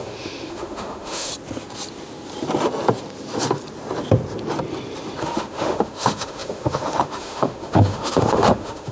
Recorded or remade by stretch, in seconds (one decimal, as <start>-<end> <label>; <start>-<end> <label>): 0.0-1.3 remade; 1.3-5.2 recorded; 5.2-8.9 remade